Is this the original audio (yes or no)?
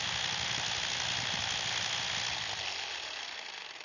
yes